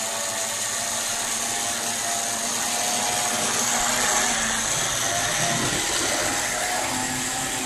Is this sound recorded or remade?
recorded